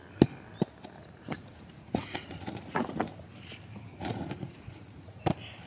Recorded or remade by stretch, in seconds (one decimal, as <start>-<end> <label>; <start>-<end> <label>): 0.0-1.0 recorded; 1.0-3.2 remade; 3.2-3.9 recorded; 3.9-5.2 remade; 5.2-5.7 recorded